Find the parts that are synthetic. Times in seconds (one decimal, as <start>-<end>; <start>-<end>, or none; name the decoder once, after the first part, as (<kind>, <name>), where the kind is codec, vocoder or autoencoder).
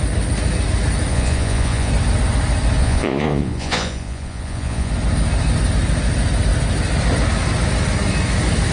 1.1-1.9 (vocoder, Vocos); 2.8-4.9